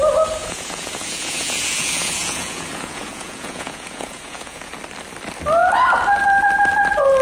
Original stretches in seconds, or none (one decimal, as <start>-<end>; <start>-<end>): 0.0-0.4; 4.7-7.2

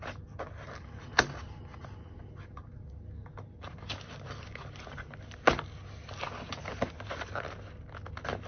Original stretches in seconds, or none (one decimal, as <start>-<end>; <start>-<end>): 0.0-8.5

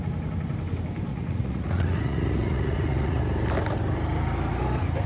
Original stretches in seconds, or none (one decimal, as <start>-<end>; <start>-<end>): 0.0-1.1; 3.2-5.1

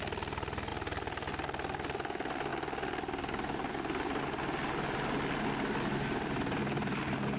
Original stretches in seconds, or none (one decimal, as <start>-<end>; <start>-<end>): 0.0-7.4

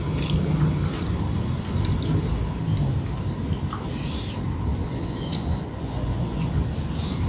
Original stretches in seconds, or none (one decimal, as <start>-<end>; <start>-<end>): 0.0-4.7; 6.5-7.3

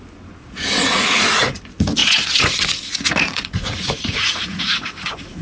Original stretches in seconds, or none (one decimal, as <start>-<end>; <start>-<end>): 0.0-0.4; 1.6-2.0